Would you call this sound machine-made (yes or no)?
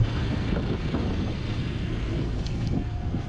yes